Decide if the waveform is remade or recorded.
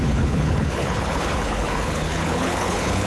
remade